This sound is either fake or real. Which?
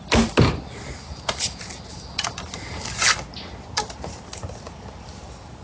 real